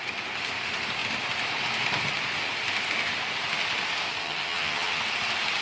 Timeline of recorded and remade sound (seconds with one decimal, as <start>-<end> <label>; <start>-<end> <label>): 0.0-4.2 recorded; 4.2-5.0 remade; 5.0-5.6 recorded